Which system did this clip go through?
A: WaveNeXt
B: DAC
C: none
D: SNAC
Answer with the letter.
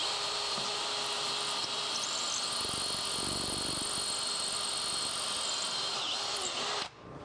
C